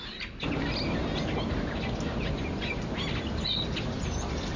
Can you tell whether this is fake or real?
real